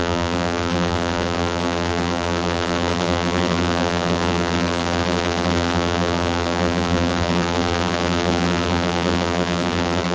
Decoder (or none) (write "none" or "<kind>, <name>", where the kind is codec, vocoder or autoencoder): vocoder, BigVGAN v2